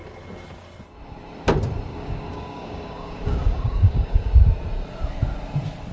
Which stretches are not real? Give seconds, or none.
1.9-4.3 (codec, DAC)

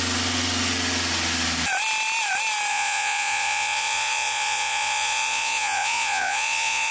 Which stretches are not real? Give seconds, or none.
2.7-6.9 (vocoder, Vocos)

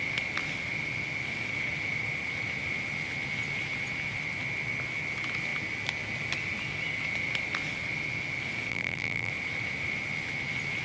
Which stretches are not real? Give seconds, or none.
8.7-9.3 (vocoder, BigVGAN v2)

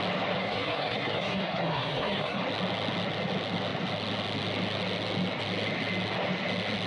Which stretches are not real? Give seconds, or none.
0.4-2.4 (codec, SNAC)

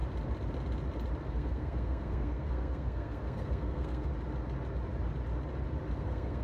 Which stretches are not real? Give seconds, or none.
1.3-4.1 (codec, SNAC); 6.0-6.4